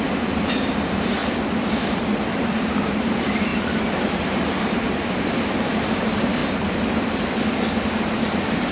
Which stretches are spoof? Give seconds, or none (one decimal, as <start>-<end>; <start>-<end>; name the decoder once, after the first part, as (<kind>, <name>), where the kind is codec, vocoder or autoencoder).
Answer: 0.0-1.2 (vocoder, BigVGAN v2); 1.9-6.4; 7.9-8.7